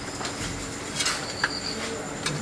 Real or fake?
real